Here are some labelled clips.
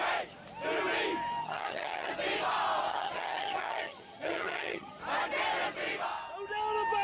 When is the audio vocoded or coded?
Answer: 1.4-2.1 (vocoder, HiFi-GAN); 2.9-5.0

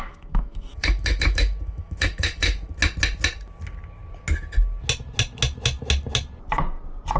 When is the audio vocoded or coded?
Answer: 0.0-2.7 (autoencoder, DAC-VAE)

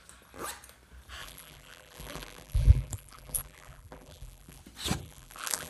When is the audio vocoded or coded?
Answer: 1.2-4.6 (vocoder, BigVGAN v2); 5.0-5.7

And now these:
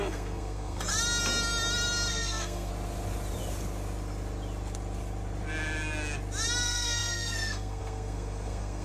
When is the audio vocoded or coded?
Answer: 0.0-0.9 (codec, SNAC); 2.1-2.7; 6.6-8.8